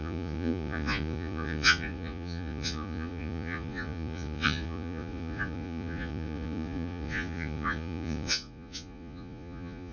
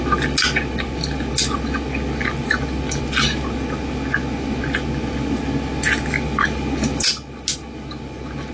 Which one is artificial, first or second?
first